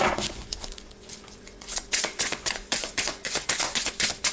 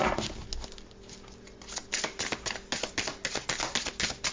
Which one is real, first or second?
second